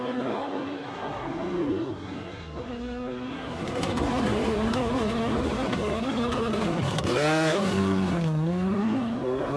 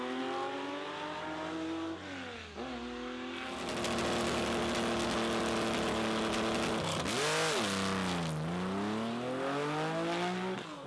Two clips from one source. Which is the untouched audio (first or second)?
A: second